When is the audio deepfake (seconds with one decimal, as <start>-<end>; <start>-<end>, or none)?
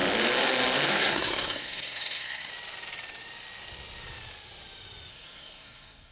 0.9-2.5; 5.1-6.1